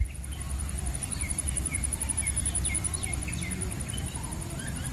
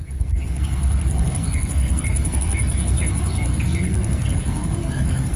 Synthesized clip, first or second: second